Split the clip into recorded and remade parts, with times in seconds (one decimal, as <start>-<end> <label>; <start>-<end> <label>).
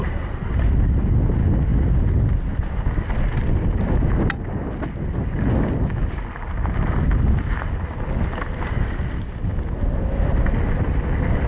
0.0-11.5 recorded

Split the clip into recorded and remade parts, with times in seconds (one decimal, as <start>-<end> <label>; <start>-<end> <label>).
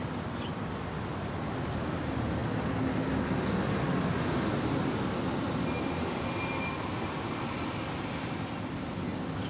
0.0-9.5 recorded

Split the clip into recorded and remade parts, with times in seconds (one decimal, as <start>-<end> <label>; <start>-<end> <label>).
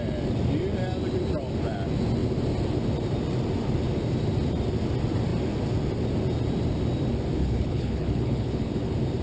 0.0-7.4 recorded; 7.4-8.7 remade; 8.7-9.2 recorded